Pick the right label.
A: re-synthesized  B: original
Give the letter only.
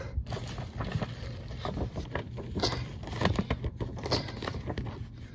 B